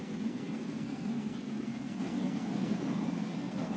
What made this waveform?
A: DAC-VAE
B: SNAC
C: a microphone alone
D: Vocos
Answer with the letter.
B